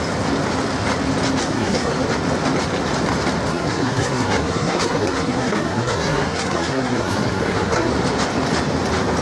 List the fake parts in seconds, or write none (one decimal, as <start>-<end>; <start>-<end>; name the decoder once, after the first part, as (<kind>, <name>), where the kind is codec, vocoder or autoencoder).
1.4-1.9 (codec, SNAC); 3.5-7.9